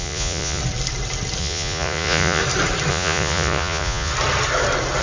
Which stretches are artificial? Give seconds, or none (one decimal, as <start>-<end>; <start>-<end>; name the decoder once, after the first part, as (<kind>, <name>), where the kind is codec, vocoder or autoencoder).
0.0-0.6 (vocoder, Vocos); 1.4-2.4; 2.9-4.1